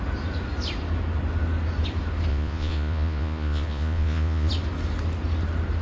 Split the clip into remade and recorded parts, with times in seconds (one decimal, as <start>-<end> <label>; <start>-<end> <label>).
0.0-2.3 recorded; 2.3-4.5 remade; 4.5-5.8 recorded